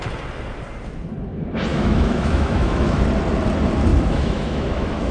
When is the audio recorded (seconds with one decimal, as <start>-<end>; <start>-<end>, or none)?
0.0-1.7; 3.0-3.9